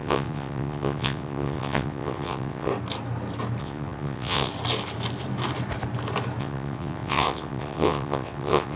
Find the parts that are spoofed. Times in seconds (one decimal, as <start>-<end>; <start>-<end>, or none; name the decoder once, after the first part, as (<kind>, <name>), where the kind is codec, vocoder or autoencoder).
0.0-2.7 (vocoder, WaveNeXt); 3.6-4.5; 6.4-8.8